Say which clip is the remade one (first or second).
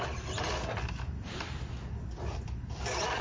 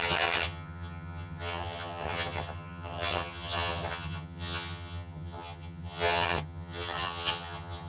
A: second